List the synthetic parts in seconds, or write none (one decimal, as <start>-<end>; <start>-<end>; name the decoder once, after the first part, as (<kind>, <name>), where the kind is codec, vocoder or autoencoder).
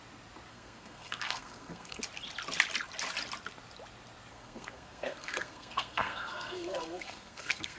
0.5-2.0 (codec, SNAC); 4.3-7.8